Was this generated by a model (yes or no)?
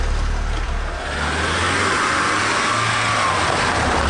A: no